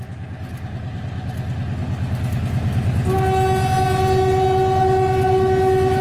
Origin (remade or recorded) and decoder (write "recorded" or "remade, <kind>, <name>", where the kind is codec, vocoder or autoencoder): recorded